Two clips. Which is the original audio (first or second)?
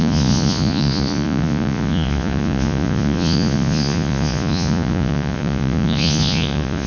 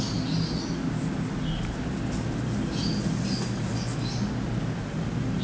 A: second